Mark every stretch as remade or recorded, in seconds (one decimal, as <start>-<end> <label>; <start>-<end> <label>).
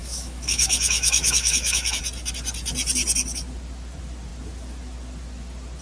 0.0-2.0 remade; 2.0-5.8 recorded